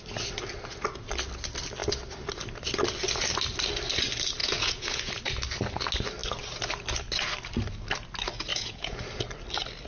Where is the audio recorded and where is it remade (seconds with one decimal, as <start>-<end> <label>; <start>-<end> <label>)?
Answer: 0.0-4.4 recorded; 4.4-5.1 remade; 5.1-8.5 recorded; 8.5-9.0 remade; 9.0-9.9 recorded